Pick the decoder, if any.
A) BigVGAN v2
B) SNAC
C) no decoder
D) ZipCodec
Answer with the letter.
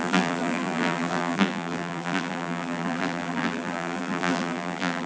A